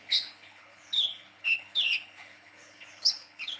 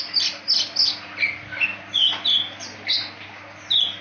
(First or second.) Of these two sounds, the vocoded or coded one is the first